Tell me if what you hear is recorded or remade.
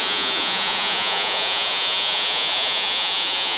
remade